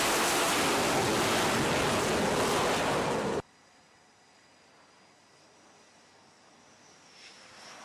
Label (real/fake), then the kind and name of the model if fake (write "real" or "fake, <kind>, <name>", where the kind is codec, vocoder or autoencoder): real